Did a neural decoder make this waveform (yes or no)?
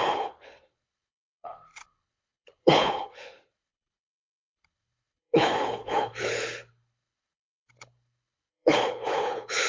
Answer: yes